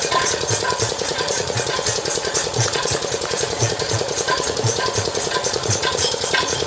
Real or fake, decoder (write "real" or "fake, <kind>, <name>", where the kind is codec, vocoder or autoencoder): fake, vocoder, Vocos